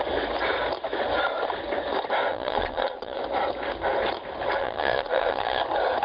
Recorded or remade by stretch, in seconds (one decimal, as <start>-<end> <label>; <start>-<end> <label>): 0.0-2.3 recorded; 2.3-3.2 remade; 3.2-4.6 recorded; 4.6-5.6 remade; 5.6-6.0 recorded